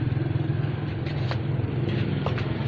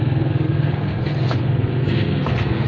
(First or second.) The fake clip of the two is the second